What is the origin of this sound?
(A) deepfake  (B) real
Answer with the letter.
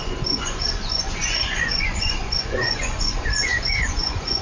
A